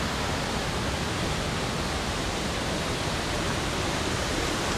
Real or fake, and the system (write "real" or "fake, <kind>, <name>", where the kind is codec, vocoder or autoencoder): real